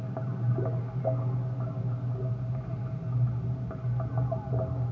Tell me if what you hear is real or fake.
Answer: real